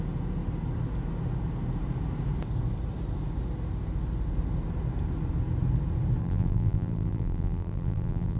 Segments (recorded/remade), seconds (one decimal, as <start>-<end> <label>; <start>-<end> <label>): 0.0-6.2 recorded; 6.2-8.4 remade